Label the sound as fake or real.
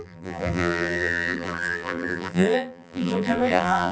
fake